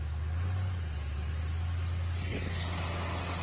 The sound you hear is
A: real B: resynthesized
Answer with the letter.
A